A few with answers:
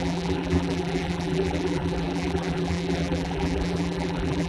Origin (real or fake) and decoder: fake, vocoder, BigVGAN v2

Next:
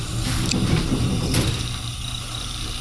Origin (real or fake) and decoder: real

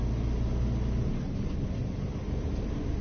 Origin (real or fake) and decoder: real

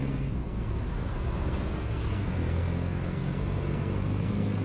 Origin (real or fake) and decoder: fake, codec, SNAC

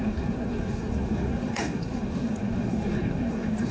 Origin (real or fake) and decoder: fake, codec, SNAC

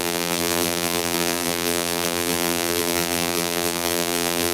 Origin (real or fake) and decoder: fake, vocoder, BigVGAN v2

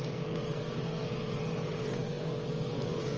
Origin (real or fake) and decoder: fake, codec, SNAC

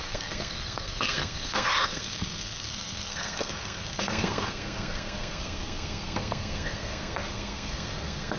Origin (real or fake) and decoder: fake, codec, SNAC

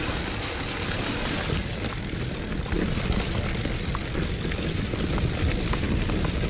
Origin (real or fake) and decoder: real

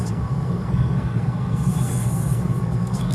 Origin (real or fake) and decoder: fake, codec, SNAC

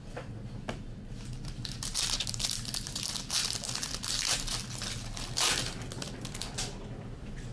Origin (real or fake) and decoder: real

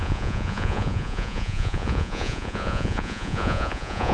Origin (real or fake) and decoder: fake, vocoder, Vocos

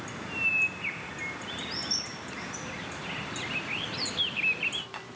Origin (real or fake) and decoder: real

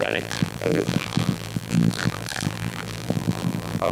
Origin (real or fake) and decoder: fake, vocoder, BigVGAN v2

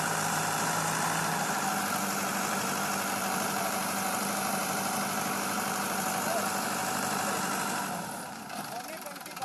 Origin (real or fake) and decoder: fake, vocoder, BigVGAN v2